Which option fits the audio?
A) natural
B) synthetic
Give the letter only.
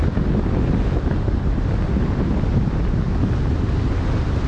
A